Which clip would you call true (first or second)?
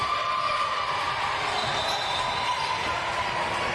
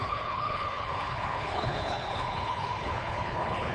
first